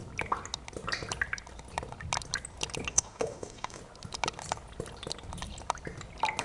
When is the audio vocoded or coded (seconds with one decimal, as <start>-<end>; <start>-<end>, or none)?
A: 2.9-3.8